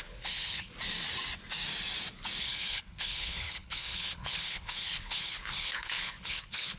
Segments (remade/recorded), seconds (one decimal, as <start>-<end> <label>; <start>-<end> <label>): 0.0-0.7 remade; 0.7-2.4 recorded; 2.4-6.8 remade